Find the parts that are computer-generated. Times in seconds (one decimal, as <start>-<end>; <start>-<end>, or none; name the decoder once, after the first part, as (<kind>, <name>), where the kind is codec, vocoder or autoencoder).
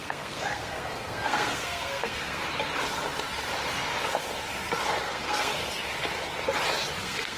0.0-2.4 (codec, SNAC); 5.0-5.5; 7.0-7.4